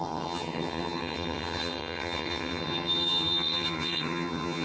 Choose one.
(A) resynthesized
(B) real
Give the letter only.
A